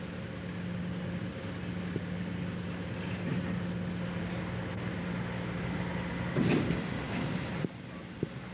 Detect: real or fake real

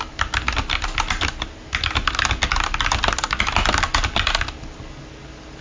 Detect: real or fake real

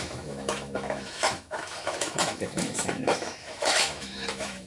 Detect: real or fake fake